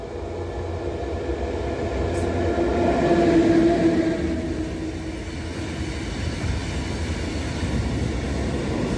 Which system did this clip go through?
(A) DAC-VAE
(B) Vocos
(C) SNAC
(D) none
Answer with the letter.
D